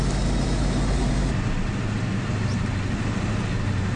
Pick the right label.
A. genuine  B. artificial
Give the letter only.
A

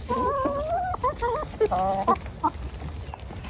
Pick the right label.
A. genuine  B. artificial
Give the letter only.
A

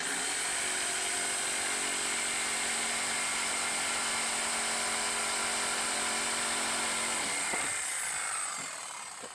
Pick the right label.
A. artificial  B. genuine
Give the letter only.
B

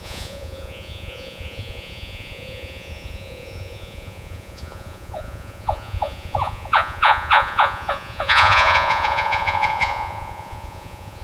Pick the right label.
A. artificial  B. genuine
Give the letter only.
A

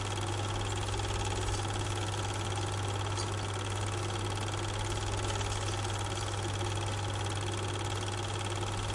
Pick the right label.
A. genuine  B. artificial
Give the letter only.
A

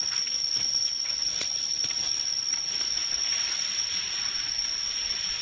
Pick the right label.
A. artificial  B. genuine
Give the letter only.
A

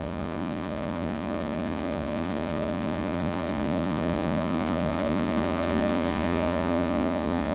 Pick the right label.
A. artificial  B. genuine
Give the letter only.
A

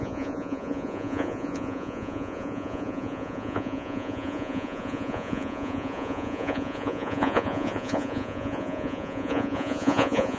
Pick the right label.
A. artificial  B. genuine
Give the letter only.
A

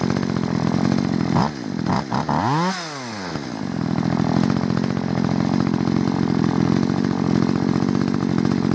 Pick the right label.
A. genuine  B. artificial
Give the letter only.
A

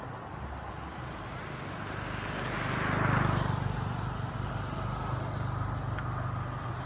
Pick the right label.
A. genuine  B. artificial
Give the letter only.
A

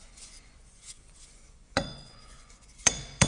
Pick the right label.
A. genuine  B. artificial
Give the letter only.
B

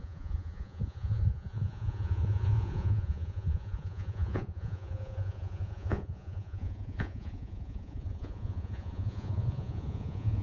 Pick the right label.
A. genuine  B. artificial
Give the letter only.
B